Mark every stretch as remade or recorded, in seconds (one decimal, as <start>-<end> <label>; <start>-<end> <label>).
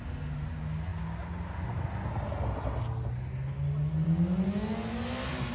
0.0-5.5 recorded